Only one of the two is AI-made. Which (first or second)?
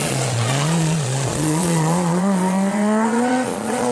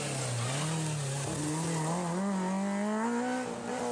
first